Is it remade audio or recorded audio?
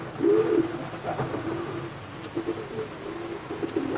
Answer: recorded